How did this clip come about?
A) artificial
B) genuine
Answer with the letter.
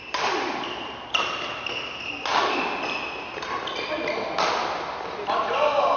B